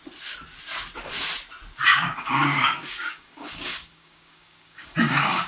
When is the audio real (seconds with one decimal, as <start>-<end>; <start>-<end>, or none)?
0.0-1.9